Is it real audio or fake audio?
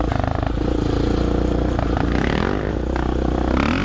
real